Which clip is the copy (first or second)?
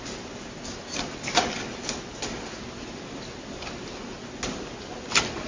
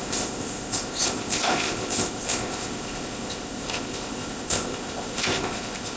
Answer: second